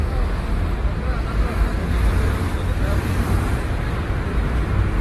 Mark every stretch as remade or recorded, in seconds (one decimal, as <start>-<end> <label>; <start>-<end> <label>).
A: 0.0-1.7 recorded; 1.7-5.0 remade